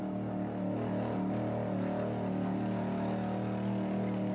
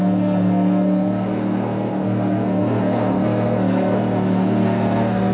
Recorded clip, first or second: first